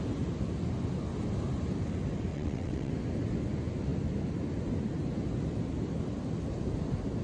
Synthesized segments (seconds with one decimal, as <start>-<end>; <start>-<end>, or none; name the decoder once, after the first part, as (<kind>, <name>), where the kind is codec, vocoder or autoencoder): 2.3-2.9 (vocoder, WaveNeXt)